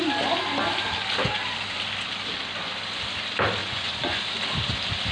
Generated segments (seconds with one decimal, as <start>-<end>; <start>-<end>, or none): 3.6-4.2